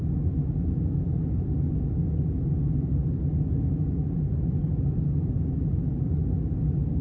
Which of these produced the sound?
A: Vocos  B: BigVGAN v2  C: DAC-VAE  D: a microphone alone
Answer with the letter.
D